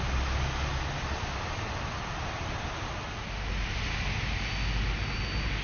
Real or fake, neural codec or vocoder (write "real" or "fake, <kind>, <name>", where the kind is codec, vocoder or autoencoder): real